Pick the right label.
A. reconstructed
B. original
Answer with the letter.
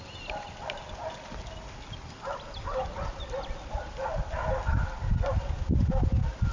B